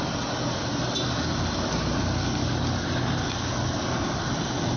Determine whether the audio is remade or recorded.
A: recorded